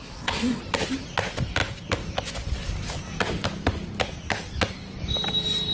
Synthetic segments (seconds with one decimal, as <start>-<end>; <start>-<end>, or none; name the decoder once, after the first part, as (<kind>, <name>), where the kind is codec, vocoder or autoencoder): 0.0-0.6 (codec, SNAC)